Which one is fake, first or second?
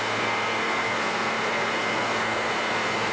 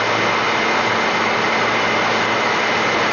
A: first